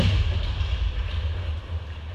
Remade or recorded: recorded